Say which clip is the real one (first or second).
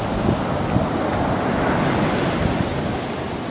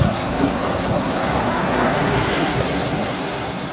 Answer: first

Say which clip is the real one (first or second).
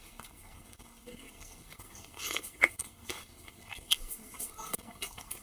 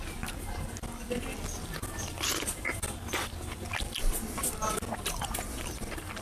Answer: second